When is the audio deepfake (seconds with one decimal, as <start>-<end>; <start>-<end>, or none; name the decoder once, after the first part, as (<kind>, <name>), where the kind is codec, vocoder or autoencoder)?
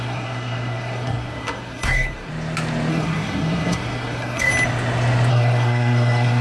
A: 0.0-2.3 (codec, SNAC); 2.9-4.5; 5.3-6.4